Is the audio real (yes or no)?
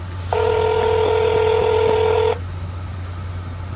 yes